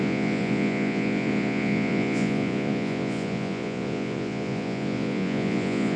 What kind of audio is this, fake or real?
fake